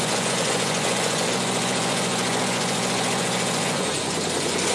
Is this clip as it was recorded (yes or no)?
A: no